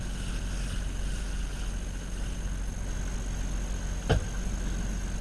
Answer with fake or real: real